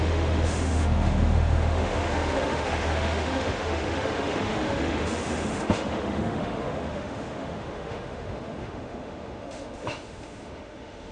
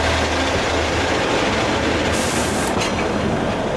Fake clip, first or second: first